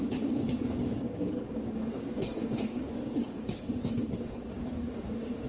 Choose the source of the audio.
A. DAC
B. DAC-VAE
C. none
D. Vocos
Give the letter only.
A